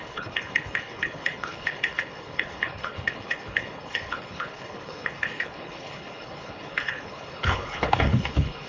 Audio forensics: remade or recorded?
remade